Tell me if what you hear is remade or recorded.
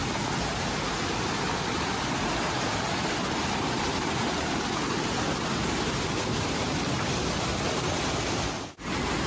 recorded